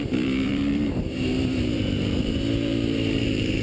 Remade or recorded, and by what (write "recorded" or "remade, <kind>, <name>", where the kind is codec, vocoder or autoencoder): remade, vocoder, BigVGAN v2